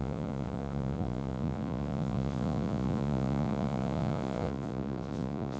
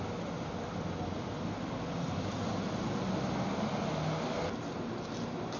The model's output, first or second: first